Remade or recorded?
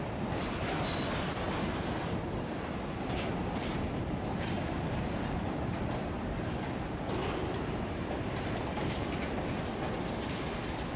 recorded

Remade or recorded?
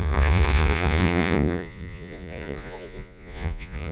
remade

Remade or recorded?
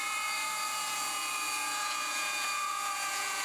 remade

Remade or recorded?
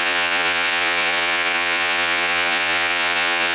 remade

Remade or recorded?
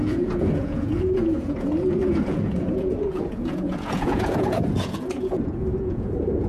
remade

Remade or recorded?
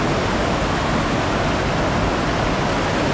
recorded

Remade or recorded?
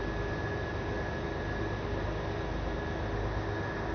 recorded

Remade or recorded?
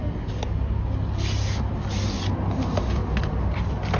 recorded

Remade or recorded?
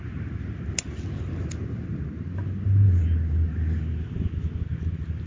recorded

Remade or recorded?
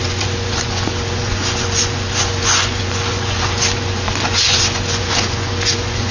remade